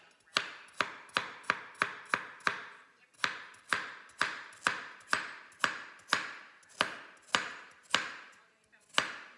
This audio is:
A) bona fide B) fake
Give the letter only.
A